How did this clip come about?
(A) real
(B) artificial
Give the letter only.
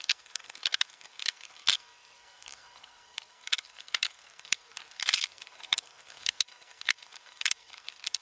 B